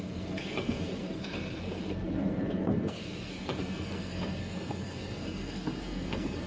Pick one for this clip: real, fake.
fake